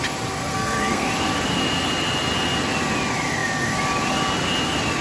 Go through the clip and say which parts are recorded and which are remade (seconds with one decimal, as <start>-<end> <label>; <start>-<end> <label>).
0.0-0.5 recorded; 0.5-1.1 remade; 1.1-5.0 recorded